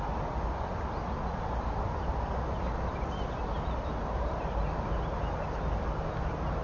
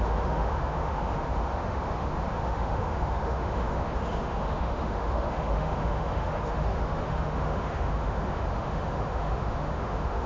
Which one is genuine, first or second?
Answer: first